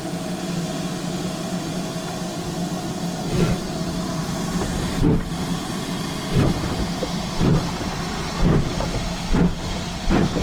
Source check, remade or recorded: recorded